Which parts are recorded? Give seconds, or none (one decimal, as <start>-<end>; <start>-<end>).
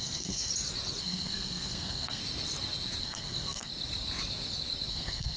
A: 0.5-1.0; 2.2-3.0; 3.7-4.9